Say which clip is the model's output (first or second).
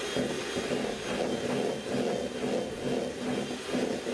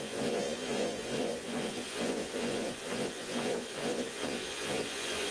second